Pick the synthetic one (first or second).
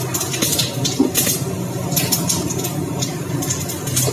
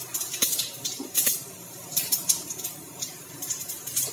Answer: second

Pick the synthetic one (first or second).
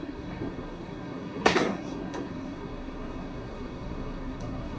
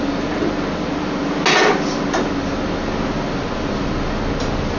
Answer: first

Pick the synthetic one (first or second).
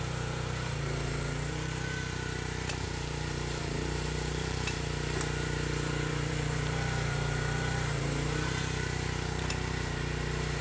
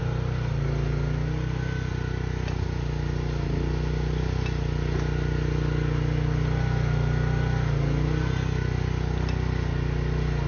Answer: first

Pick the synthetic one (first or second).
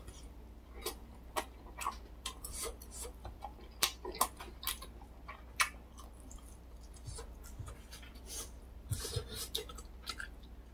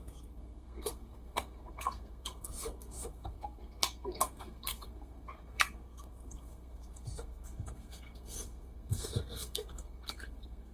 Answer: second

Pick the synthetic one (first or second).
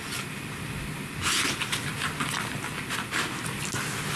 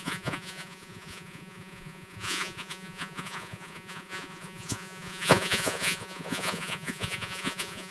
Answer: second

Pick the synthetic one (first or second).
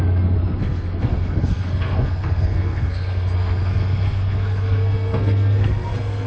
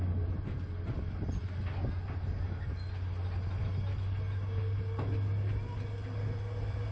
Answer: first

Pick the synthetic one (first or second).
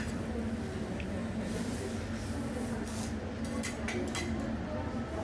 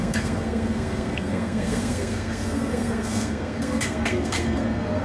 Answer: second